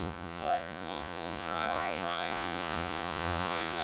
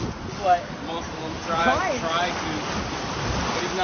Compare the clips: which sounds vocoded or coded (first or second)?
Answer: first